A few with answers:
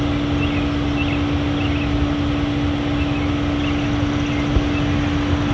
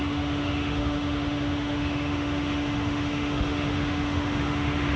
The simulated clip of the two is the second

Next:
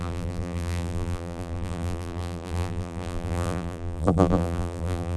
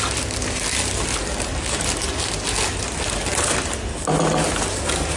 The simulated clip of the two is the first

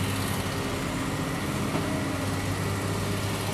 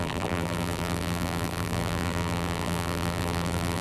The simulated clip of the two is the second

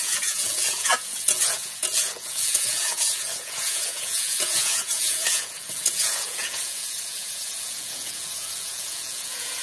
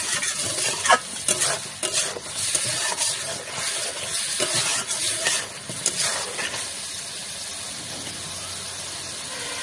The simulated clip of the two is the first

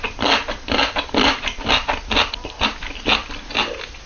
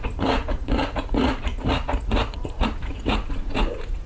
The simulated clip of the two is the second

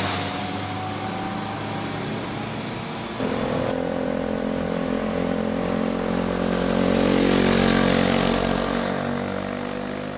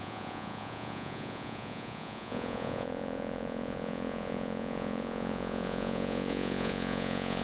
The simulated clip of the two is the second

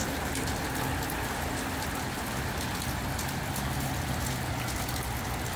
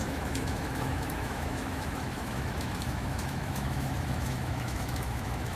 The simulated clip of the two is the second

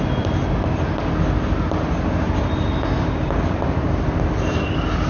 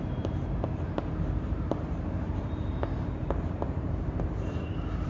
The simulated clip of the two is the second